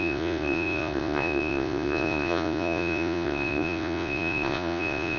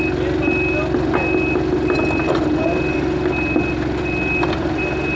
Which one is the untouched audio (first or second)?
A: second